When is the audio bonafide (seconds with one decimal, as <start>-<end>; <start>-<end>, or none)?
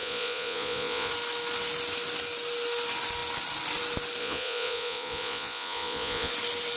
1.1-4.2; 6.3-6.8